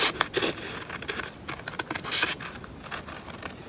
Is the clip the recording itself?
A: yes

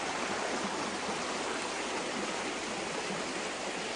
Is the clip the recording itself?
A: yes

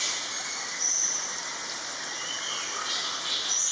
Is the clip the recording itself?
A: yes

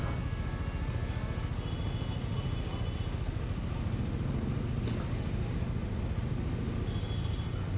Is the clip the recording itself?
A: yes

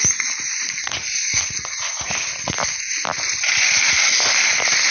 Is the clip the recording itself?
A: yes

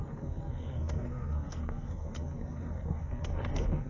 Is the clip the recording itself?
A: no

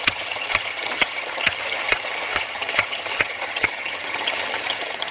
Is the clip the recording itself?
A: no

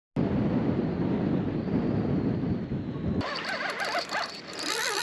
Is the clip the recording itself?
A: yes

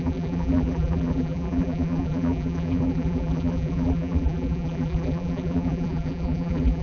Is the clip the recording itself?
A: no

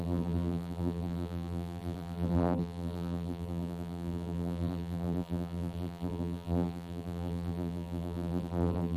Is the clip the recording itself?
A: no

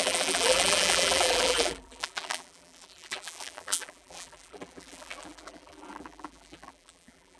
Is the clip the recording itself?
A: no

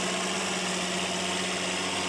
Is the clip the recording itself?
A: yes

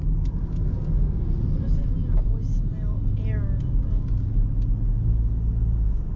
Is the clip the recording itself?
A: yes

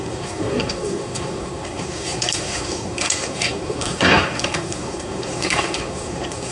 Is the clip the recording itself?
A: no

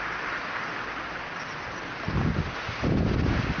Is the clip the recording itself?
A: yes